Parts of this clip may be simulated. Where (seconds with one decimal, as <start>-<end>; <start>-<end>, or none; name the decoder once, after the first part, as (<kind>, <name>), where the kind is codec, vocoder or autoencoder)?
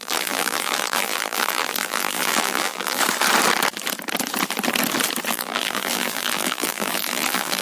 0.0-3.0 (vocoder, BigVGAN v2); 5.3-7.6